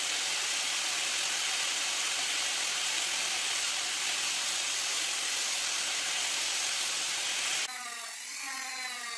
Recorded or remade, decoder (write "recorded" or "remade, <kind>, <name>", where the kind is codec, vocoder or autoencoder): recorded